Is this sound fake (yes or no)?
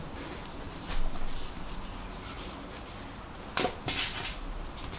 no